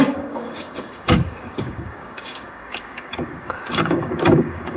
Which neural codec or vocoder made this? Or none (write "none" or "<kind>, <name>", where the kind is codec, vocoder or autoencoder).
codec, DAC